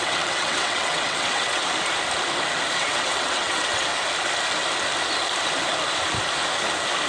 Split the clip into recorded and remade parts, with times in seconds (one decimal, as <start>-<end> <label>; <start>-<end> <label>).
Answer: 0.0-1.6 remade; 1.6-2.8 recorded; 2.8-3.9 remade; 3.9-7.1 recorded

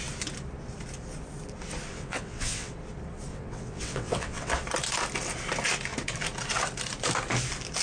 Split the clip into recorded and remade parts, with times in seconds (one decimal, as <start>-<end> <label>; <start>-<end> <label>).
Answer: 0.0-1.9 recorded; 1.9-2.7 remade; 2.7-3.3 recorded; 3.3-4.5 remade; 4.5-7.8 recorded

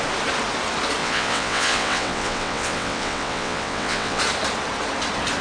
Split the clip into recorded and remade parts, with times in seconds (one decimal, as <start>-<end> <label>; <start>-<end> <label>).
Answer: 0.0-1.0 recorded; 1.0-4.2 remade; 4.2-5.4 recorded

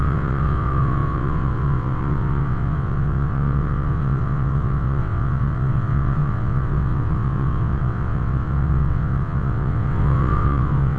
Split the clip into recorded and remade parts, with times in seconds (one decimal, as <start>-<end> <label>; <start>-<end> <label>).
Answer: 0.0-11.0 remade

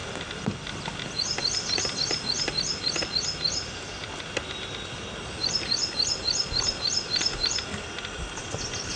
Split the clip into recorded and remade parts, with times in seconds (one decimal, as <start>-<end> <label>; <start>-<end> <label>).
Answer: 0.0-9.0 recorded

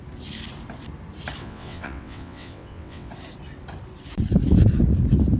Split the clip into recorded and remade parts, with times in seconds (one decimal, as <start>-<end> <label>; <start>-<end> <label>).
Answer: 0.0-1.4 recorded; 1.4-3.1 remade; 3.1-5.4 recorded

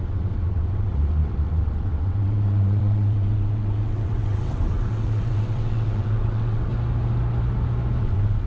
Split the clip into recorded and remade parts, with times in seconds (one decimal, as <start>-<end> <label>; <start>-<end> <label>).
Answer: 0.0-6.7 remade; 6.7-8.0 recorded; 8.0-8.5 remade

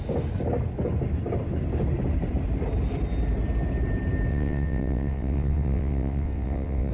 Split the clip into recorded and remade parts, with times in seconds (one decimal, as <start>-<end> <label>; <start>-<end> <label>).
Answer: 0.0-4.3 recorded; 4.3-6.9 remade